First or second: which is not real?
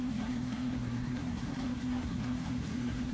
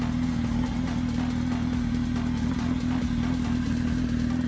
first